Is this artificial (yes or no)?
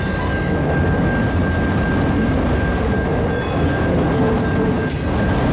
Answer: no